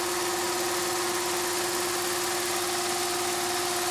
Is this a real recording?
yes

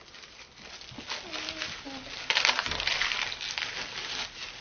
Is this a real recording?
yes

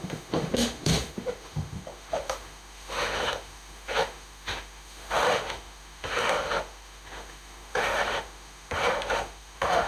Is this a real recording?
no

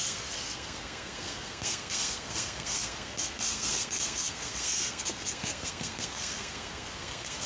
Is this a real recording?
no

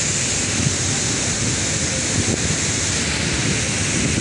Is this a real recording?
yes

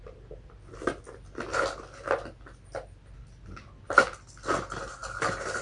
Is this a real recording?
yes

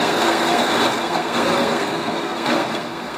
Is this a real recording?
no